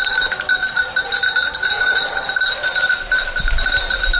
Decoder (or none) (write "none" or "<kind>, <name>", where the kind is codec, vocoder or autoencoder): none